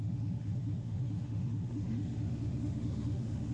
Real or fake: fake